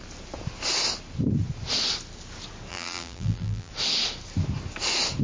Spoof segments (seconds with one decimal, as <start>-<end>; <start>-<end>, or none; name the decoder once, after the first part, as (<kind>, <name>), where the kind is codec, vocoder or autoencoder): 2.7-3.7 (vocoder, BigVGAN v2)